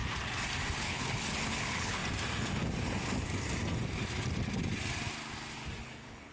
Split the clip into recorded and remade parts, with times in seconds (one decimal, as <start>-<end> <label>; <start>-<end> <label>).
0.0-0.8 recorded; 0.8-2.0 remade; 2.0-5.8 recorded; 5.8-6.3 remade